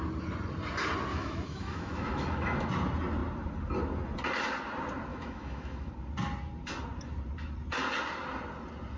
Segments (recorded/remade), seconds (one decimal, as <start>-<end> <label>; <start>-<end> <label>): 0.0-1.1 recorded; 1.1-2.7 remade; 2.7-5.1 recorded; 5.1-5.9 remade; 5.9-9.0 recorded